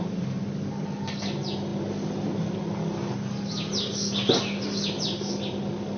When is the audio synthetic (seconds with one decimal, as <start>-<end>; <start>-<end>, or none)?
none

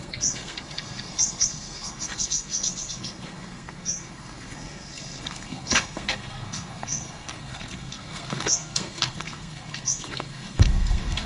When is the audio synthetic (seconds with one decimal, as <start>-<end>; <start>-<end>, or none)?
0.0-11.3

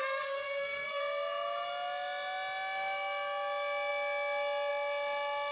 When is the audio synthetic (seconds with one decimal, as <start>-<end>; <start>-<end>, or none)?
0.0-1.0

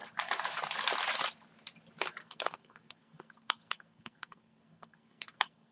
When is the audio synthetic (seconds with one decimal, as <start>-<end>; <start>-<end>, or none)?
2.2-5.7

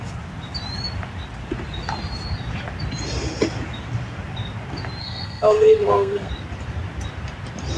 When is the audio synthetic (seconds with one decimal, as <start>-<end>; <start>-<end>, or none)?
5.0-6.3